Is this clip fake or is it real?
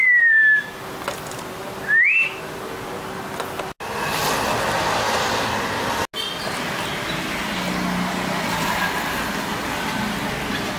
real